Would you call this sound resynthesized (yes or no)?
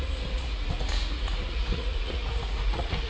yes